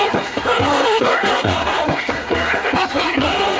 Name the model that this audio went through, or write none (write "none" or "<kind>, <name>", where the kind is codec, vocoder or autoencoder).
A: codec, SNAC